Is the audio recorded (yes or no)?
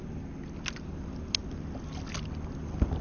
yes